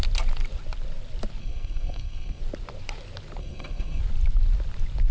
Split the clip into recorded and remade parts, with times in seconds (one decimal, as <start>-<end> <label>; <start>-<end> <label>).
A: 0.0-1.4 recorded; 1.4-2.4 remade; 2.4-3.4 recorded; 3.4-4.0 remade; 4.0-5.1 recorded